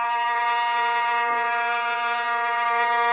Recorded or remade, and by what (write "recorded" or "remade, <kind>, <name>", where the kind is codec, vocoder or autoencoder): remade, vocoder, BigVGAN v2